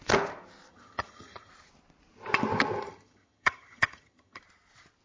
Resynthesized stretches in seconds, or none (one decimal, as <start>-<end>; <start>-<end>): 0.7-1.5; 2.8-4.4